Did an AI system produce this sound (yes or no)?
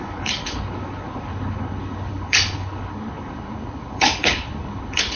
yes